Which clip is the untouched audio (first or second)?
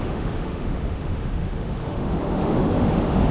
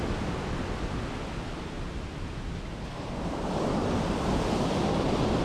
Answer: second